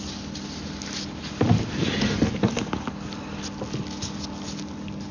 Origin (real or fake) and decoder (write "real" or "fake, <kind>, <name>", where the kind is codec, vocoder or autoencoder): real